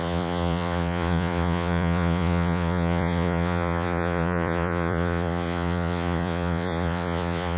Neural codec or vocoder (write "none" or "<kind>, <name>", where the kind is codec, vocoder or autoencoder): vocoder, Vocos